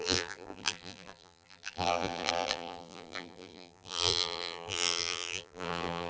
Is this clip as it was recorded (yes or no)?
no